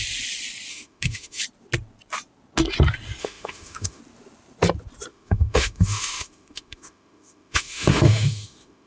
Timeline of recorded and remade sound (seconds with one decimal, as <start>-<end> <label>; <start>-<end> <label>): 0.0-0.7 recorded; 0.7-1.4 remade; 1.4-3.2 recorded; 3.2-4.0 remade; 4.0-5.1 recorded; 5.1-8.9 remade